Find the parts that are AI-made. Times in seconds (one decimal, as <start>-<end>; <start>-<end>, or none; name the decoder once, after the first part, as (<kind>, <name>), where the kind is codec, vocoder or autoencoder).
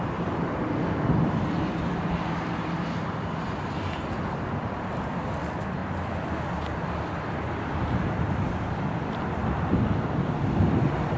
0.0-5.8 (vocoder, BigVGAN v2); 8.5-9.4; 10.0-11.2